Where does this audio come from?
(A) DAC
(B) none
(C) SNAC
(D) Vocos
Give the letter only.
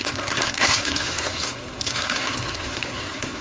C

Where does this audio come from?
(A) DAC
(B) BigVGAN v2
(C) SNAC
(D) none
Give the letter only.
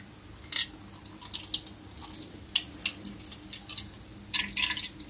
D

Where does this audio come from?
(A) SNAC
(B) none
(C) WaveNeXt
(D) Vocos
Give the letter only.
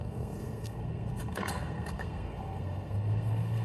A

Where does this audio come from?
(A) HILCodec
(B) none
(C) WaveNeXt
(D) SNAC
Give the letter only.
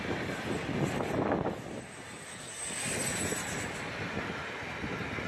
B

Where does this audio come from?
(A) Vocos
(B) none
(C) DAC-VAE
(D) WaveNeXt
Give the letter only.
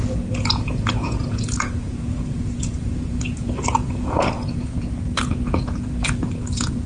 A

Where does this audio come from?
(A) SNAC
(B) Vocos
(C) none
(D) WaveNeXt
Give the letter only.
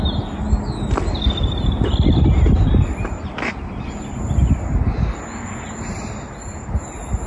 C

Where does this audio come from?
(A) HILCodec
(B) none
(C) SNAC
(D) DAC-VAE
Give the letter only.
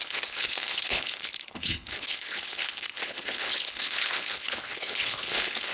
A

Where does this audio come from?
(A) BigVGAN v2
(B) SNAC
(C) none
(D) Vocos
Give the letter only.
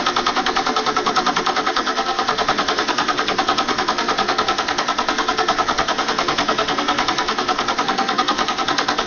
B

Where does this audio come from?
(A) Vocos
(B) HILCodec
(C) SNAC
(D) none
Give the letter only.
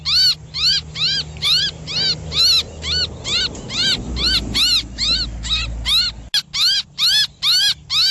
D